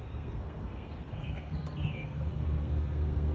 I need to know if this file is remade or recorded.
remade